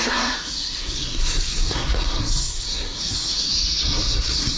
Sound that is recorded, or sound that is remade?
remade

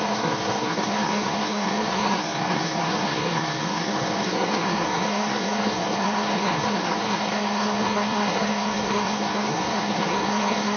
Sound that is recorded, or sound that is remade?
remade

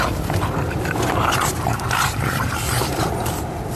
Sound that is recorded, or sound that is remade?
recorded